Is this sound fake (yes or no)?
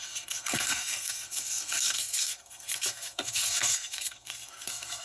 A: yes